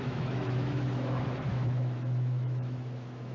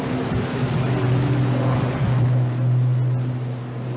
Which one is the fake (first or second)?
first